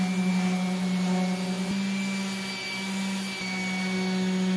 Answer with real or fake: real